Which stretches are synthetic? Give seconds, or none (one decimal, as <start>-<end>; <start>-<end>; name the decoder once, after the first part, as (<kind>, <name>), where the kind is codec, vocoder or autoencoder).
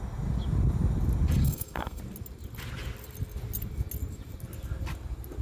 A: 1.4-2.0 (codec, SNAC)